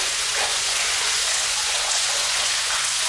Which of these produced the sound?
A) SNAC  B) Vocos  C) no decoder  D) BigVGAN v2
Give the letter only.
B